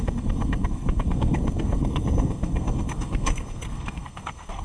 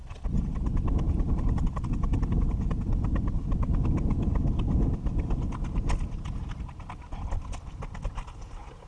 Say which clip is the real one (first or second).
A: second